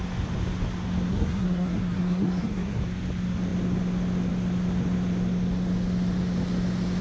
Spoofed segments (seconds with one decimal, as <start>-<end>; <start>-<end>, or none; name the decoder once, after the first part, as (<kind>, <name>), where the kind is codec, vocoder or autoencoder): 1.1-2.8 (codec, SNAC)